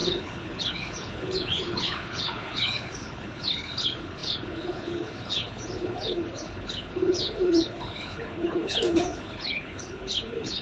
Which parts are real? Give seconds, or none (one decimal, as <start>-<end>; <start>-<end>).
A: none